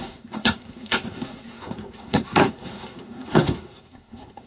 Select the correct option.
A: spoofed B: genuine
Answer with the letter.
A